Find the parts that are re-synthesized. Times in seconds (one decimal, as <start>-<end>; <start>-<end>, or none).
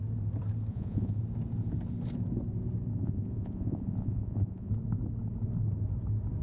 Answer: 0.7-1.2; 3.0-4.7